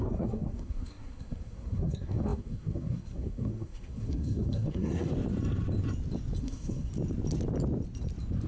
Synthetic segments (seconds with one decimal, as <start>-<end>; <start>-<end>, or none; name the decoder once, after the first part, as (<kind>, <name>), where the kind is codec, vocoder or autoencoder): 0.0-5.1 (codec, SNAC); 6.4-6.9